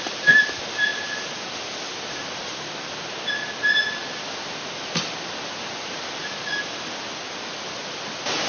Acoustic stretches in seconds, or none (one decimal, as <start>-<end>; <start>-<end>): 0.0-8.5